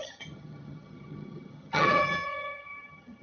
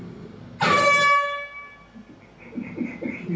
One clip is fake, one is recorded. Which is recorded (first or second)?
second